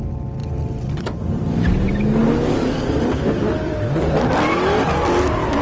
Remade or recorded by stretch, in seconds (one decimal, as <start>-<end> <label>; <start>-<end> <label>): 0.0-5.6 recorded